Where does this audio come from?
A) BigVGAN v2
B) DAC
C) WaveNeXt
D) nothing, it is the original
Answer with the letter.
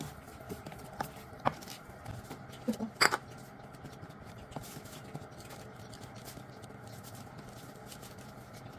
D